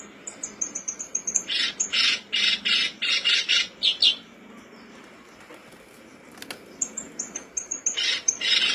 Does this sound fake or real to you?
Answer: real